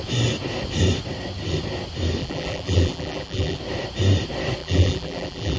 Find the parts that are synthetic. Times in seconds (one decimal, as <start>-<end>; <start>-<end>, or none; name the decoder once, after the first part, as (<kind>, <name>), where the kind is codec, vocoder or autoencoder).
2.2-3.6 (vocoder, BigVGAN v2); 4.6-5.6